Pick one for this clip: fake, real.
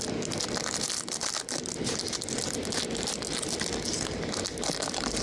real